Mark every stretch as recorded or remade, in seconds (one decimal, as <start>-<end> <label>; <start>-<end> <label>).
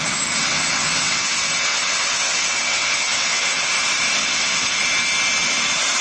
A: 0.0-0.5 recorded; 0.5-3.7 remade; 3.7-4.2 recorded; 4.2-4.8 remade; 4.8-6.0 recorded